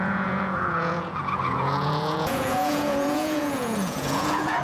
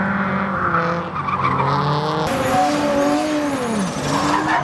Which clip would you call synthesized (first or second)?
first